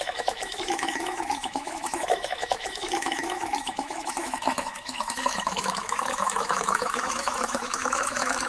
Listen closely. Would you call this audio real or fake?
fake